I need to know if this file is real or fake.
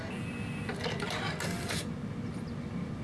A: real